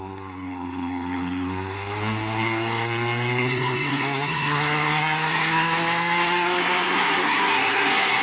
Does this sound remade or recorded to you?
remade